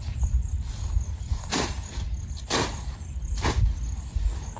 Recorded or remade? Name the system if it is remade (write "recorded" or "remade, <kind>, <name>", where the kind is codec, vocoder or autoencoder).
recorded